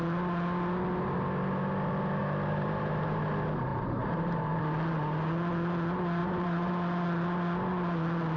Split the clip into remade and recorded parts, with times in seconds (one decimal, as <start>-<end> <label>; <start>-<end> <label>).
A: 0.0-2.2 recorded; 2.2-3.2 remade; 3.2-3.7 recorded; 3.7-4.6 remade; 4.6-6.2 recorded; 6.2-6.7 remade; 6.7-8.4 recorded